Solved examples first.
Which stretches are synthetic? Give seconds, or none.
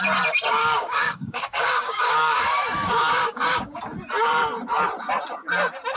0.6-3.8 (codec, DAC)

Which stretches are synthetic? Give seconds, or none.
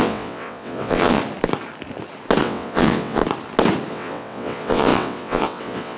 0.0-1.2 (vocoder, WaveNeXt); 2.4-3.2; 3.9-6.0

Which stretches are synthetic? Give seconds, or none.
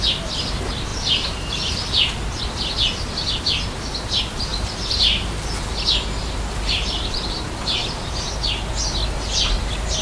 0.9-2.4 (vocoder, BigVGAN v2); 4.5-5.4; 6.2-7.6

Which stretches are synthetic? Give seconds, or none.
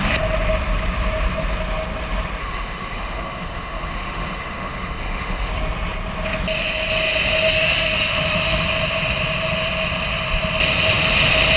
2.4-5.5 (autoencoder, DAC-VAE); 7.5-8.6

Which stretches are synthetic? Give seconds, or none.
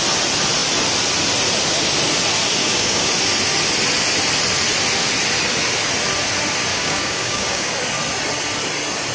2.6-3.1 (codec, DAC); 6.7-7.7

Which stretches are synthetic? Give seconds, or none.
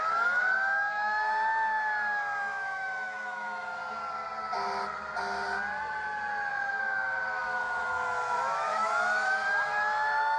0.0-3.8 (autoencoder, DAC-VAE); 6.5-10.4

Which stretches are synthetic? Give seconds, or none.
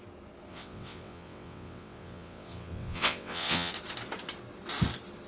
0.5-3.7 (vocoder, WaveNeXt)